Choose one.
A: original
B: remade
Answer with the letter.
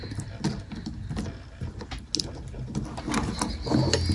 A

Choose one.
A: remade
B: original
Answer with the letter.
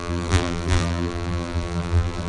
A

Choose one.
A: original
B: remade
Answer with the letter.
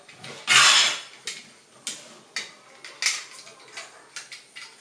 A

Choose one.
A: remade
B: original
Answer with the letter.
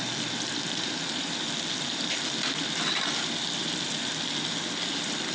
B